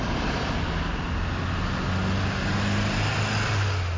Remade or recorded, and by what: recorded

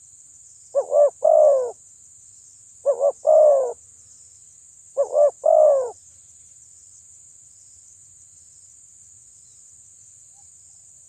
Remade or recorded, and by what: recorded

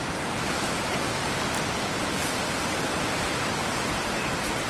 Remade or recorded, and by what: recorded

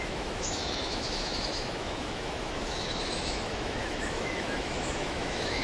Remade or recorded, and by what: remade, autoencoder, DAC-VAE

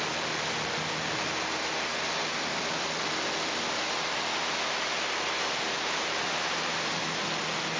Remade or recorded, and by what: recorded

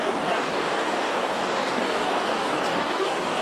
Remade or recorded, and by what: remade, codec, DAC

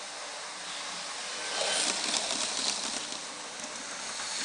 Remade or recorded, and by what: recorded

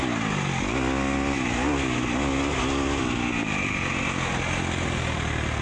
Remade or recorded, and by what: recorded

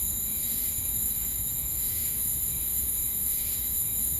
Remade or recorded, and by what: remade, autoencoder, DAC-VAE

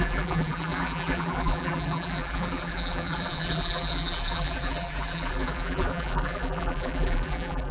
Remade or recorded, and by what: remade, vocoder, BigVGAN v2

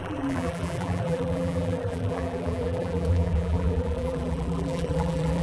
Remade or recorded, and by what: remade, vocoder, BigVGAN v2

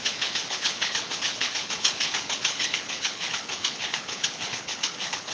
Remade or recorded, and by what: remade, codec, HILCodec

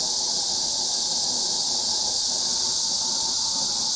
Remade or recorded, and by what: recorded